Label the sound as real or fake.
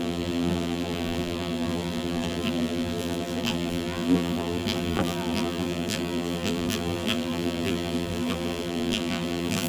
fake